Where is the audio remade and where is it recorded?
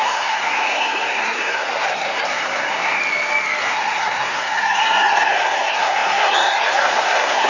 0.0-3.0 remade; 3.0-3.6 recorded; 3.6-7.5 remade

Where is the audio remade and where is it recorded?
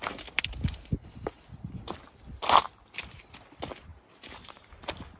0.0-3.9 recorded; 3.9-4.7 remade; 4.7-5.2 recorded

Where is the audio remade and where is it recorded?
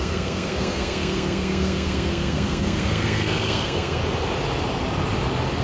0.0-4.0 remade; 4.0-5.6 recorded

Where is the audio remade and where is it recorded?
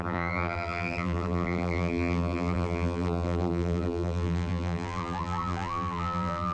0.0-6.5 remade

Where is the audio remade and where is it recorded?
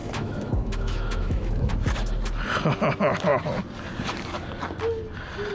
0.0-1.7 remade; 1.7-5.5 recorded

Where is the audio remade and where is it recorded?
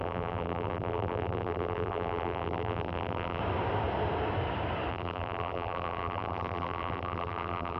0.0-3.4 remade; 3.4-4.9 recorded; 4.9-7.8 remade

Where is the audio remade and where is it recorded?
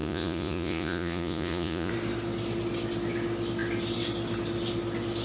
0.0-1.9 remade; 1.9-5.2 recorded